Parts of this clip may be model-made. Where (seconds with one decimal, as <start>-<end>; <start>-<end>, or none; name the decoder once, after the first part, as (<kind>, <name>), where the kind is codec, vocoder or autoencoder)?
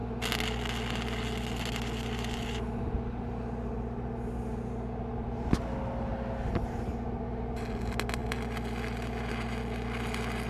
none